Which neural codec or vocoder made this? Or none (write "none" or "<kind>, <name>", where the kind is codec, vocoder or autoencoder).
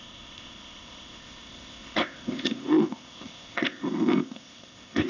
codec, ZipCodec